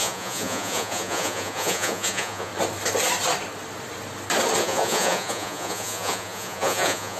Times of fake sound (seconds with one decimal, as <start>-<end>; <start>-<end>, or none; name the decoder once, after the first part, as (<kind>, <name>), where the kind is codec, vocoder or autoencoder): 0.0-2.5 (vocoder, Vocos); 4.6-7.2

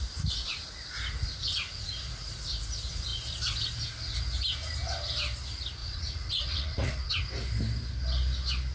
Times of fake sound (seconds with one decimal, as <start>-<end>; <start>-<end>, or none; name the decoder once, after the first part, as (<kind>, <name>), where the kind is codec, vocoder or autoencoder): 1.4-2.0 (vocoder, Vocos); 5.8-7.1

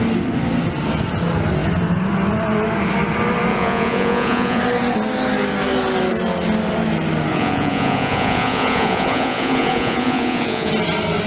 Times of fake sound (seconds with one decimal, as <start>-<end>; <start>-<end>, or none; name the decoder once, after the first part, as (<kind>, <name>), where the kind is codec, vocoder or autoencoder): 3.5-4.6 (vocoder, Vocos); 7.3-10.7

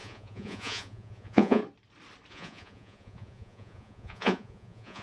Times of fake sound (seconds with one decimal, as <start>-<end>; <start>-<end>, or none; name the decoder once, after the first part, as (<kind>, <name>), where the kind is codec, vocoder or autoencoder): 0.0-1.6 (vocoder, Vocos); 2.3-5.0